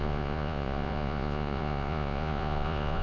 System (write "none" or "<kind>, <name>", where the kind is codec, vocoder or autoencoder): vocoder, Vocos